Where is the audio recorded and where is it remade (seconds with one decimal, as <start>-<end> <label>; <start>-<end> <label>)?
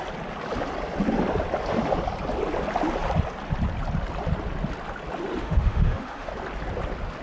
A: 0.0-5.4 recorded; 5.4-6.3 remade; 6.3-7.2 recorded